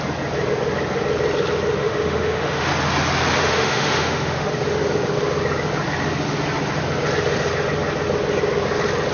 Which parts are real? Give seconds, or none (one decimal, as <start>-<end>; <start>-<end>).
0.0-1.8; 2.7-3.4; 4.5-9.1